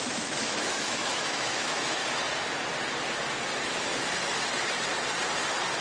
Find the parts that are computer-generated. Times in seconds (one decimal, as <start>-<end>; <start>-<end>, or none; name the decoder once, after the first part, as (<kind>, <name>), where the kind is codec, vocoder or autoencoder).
0.0-2.0 (autoencoder, DAC-VAE)